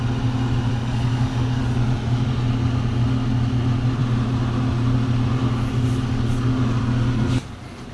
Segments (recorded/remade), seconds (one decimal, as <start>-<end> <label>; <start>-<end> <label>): 0.0-0.7 recorded; 0.7-1.6 remade; 1.6-7.9 recorded